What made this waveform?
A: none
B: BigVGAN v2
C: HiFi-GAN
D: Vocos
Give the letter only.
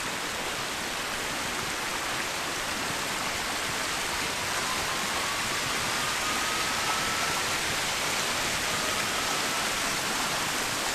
A